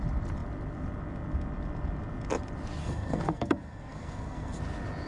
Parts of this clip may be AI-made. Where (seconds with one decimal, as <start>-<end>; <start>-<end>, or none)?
2.8-4.6